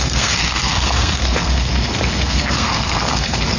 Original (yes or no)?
no